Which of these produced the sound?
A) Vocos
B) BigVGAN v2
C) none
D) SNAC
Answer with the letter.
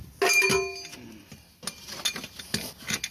C